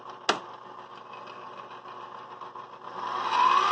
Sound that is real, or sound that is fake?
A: real